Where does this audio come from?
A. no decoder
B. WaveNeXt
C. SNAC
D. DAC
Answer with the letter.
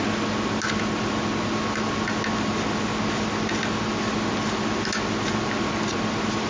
A